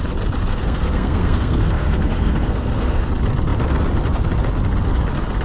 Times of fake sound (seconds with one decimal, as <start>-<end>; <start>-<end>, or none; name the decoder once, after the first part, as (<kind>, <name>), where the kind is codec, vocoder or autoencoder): 0.5-3.1 (codec, SNAC)

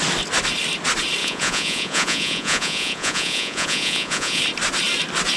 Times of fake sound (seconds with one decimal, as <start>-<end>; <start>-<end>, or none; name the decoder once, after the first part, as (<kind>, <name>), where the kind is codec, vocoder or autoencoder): 1.2-4.4 (vocoder, Vocos)

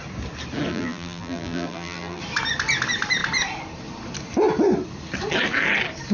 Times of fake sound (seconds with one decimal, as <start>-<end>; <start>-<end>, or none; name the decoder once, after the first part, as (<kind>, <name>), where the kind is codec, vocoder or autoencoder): 0.7-2.2 (vocoder, BigVGAN v2)

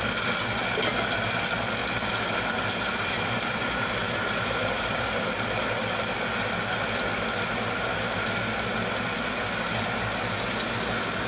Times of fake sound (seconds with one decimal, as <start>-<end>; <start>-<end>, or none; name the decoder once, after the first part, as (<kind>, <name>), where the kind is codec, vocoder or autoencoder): 1.8-2.3 (vocoder, BigVGAN v2); 2.9-5.2